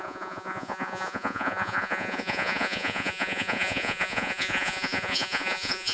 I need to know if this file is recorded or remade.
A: remade